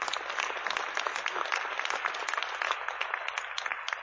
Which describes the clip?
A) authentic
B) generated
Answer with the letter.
A